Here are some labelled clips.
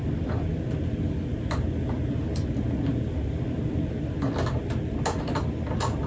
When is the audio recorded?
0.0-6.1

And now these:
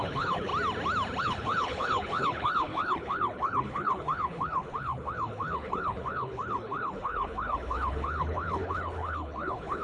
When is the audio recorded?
0.5-1.2

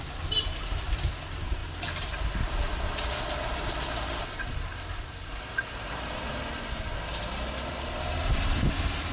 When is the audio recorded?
6.3-7.7

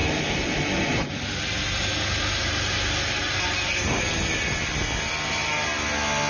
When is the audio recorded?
0.0-6.3